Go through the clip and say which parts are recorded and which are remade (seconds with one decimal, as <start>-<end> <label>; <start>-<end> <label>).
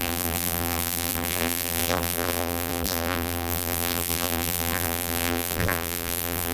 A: 0.0-6.5 remade